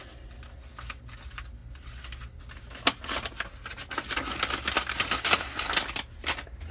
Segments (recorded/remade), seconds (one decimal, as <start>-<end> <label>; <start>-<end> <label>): 0.0-6.7 recorded